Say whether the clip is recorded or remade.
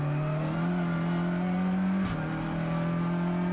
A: recorded